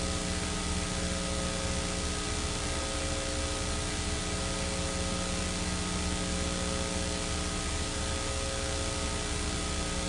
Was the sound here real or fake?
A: real